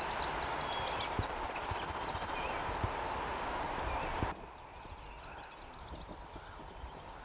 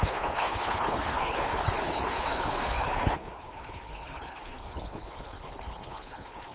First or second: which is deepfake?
second